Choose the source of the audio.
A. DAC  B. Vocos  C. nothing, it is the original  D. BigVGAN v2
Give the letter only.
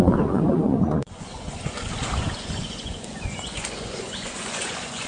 B